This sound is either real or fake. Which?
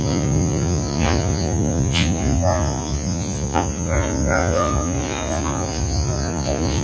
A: fake